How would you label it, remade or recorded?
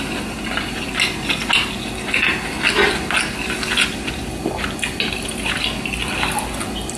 recorded